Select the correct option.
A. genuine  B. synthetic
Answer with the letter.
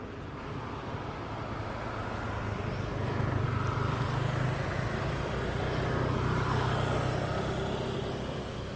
A